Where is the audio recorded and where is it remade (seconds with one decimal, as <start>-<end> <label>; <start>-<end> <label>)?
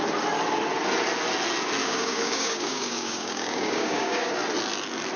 0.0-1.8 recorded; 1.8-4.3 remade; 4.3-5.2 recorded